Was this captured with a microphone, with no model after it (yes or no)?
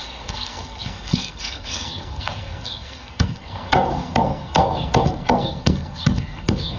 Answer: no